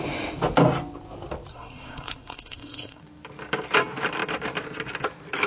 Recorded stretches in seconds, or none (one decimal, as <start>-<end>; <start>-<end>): 0.0-1.5; 3.0-5.5